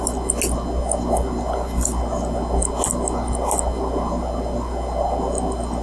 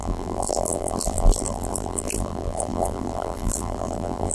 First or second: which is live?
first